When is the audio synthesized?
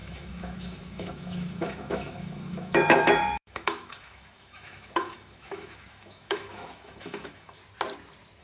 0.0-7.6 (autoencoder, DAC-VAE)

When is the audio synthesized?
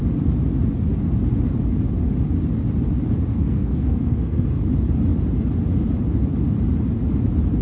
3.3-4.6 (codec, SNAC)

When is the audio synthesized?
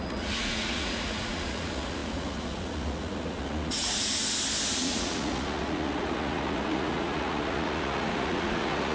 0.0-4.2 (vocoder, Vocos); 4.7-8.9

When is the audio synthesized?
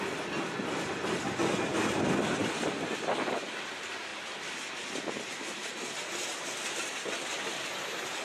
none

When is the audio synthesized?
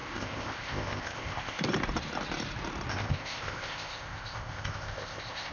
0.0-1.6 (codec, ZipCodec); 2.9-5.5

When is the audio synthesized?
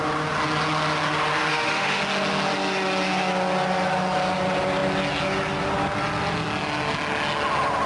1.5-2.0 (autoencoder, DAC-VAE)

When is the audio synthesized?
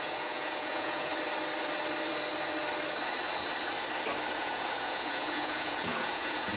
0.0-1.1 (vocoder, Vocos); 4.3-6.6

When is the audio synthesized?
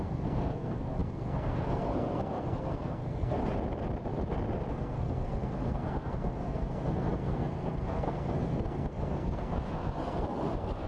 0.0-3.4 (codec, SNAC); 4.7-10.9